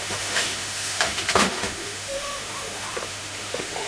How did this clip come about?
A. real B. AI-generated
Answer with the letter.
B